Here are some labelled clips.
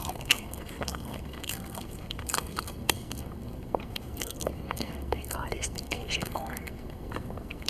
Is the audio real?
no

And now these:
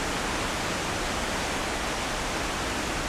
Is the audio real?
yes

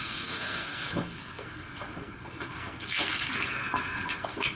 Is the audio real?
no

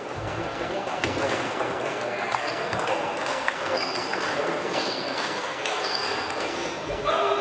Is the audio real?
no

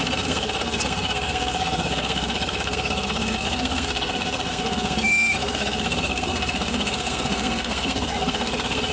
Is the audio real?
no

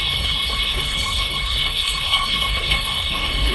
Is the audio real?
no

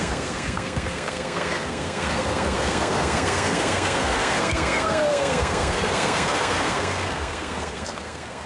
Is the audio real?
no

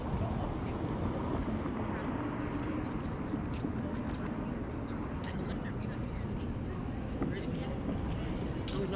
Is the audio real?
yes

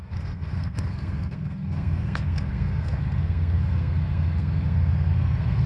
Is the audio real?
no